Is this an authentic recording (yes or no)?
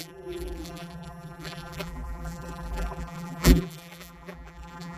no